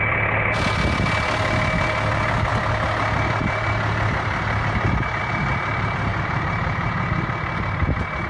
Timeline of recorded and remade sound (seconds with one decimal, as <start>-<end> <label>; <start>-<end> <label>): 0.0-6.1 recorded; 6.1-7.1 remade; 7.1-8.3 recorded